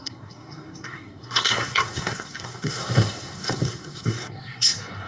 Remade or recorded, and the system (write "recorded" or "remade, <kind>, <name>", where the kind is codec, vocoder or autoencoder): remade, codec, SNAC